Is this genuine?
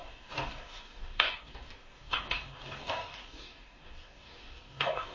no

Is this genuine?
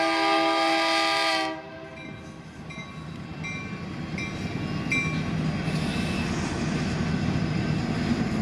yes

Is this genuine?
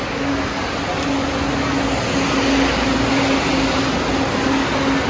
yes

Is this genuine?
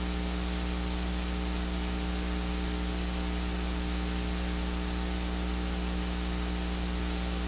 yes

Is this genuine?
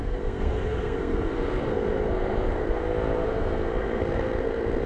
no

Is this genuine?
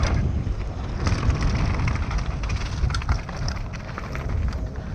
yes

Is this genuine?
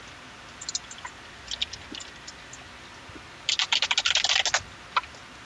yes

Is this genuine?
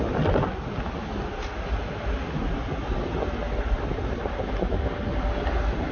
yes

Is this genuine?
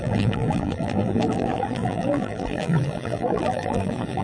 no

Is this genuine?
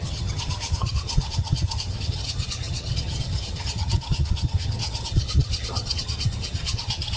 no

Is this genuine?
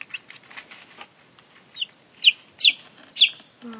yes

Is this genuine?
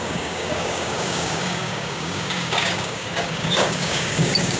no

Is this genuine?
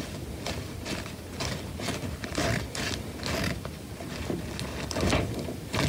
yes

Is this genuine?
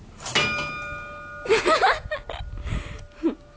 yes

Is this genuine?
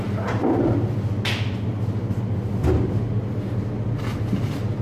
yes